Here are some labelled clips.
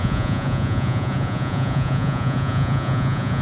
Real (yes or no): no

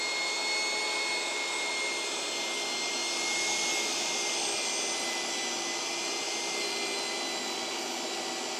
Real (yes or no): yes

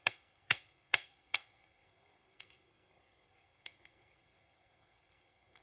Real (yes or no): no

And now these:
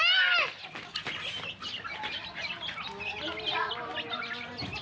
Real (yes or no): yes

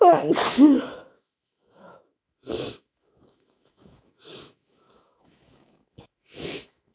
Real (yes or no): no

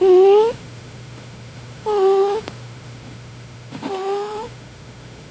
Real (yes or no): no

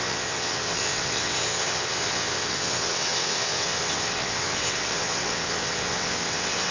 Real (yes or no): no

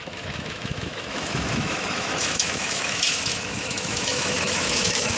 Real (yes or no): no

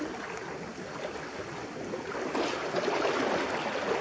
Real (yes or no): yes